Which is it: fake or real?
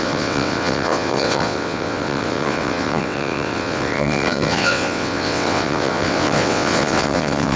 fake